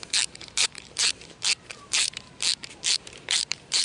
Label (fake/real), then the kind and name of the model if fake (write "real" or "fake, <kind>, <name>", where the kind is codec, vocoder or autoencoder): fake, vocoder, BigVGAN v2